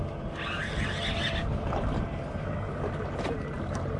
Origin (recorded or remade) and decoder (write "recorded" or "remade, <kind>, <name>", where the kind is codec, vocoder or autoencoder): recorded